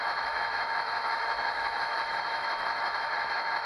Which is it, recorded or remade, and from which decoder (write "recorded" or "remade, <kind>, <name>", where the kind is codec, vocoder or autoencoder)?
remade, autoencoder, DAC-VAE